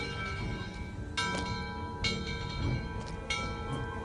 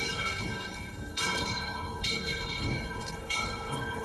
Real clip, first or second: first